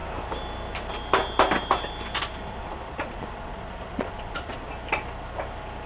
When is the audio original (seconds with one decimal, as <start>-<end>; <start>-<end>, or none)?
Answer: 0.0-2.6; 4.7-5.9